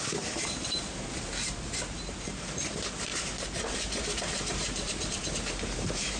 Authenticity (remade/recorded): remade